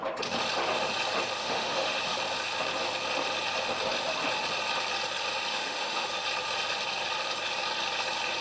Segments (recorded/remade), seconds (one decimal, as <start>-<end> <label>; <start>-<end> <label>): 0.0-1.4 recorded; 1.4-2.0 remade; 2.0-5.5 recorded; 5.5-6.1 remade; 6.1-8.4 recorded